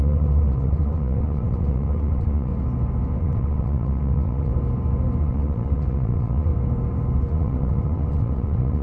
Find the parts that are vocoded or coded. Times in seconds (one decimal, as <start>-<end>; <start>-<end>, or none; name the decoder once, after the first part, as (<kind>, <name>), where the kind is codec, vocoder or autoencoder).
0.0-2.5 (vocoder, WaveNeXt); 3.2-4.5; 5.2-6.5; 7.3-8.8